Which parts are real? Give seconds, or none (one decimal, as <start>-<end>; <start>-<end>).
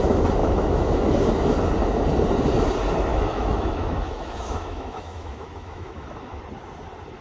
0.0-0.4; 1.1-3.1; 6.4-7.2